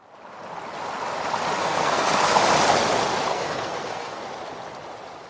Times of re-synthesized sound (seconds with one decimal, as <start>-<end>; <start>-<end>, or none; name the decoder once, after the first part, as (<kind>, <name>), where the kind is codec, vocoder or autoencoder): 1.6-2.4 (codec, SNAC); 3.3-4.2